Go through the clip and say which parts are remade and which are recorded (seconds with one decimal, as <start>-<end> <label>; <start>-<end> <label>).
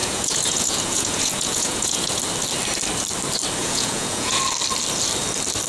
0.0-2.2 remade; 2.2-3.6 recorded; 3.6-4.4 remade; 4.4-5.7 recorded